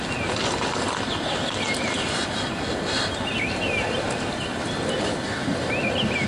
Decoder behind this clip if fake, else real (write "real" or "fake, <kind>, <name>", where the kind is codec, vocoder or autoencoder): real